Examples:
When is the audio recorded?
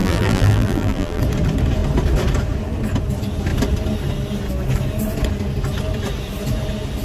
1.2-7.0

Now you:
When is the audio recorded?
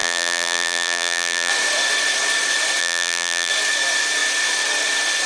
1.5-2.8; 3.5-5.3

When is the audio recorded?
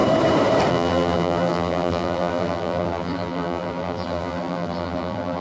0.0-0.7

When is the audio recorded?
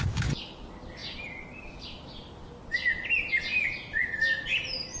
0.0-5.0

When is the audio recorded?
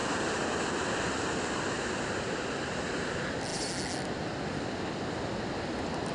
0.0-6.1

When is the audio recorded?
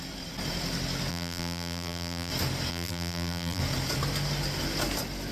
0.0-1.1; 2.3-2.7; 3.6-5.3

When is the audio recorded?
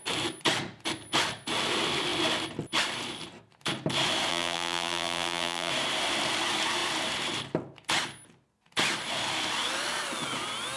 0.0-4.3; 5.7-10.8